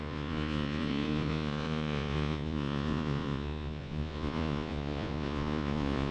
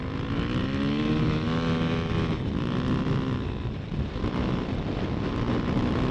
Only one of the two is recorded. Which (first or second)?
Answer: second